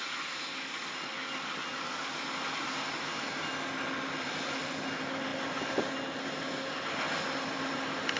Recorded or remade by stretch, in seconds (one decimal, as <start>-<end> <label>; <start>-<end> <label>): 0.0-8.2 recorded